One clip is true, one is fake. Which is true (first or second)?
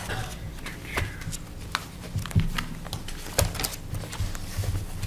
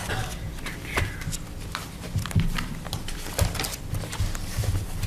first